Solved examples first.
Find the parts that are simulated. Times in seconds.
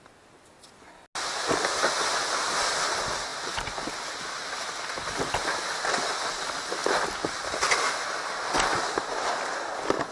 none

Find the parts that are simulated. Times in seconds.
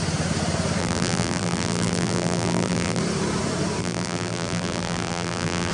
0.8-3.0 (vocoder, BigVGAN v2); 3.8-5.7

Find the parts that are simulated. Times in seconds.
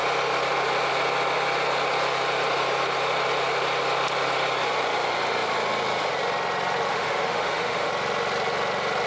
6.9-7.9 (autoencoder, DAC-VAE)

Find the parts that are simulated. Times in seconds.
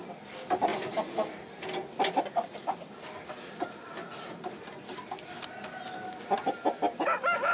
none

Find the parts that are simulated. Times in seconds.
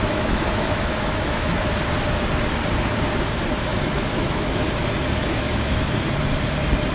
0.0-1.7 (autoencoder, DAC-VAE); 3.7-4.7; 5.2-5.9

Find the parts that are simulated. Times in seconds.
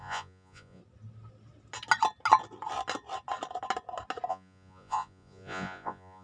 0.0-0.8 (vocoder, Vocos); 4.3-6.2